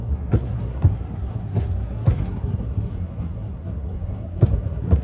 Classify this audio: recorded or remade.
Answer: remade